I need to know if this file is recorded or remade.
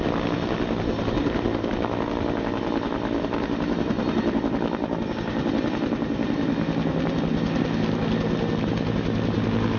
recorded